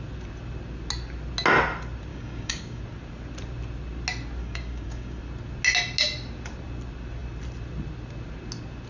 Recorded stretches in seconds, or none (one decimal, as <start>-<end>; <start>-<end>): 0.0-2.1; 2.8-4.4; 5.2-8.9